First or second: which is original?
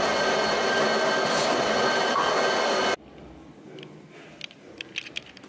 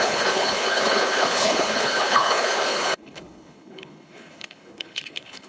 first